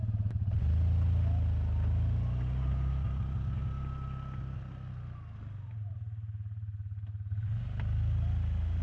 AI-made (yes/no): no